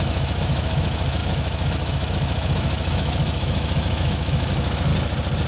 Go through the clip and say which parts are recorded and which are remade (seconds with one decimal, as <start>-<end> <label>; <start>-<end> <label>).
0.0-4.9 remade; 4.9-5.5 recorded